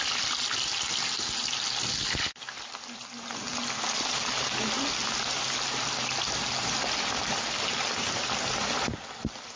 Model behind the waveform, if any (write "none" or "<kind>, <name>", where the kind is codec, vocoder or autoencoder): none